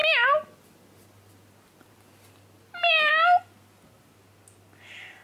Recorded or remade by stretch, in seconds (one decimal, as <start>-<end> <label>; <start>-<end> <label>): 0.0-5.2 recorded